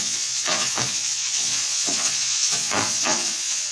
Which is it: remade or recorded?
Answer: remade